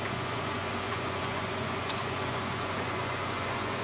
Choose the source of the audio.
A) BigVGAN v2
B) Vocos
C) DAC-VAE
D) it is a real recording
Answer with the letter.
B